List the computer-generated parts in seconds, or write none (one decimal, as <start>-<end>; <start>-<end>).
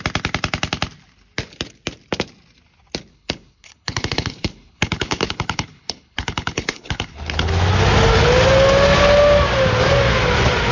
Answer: 3.1-7.5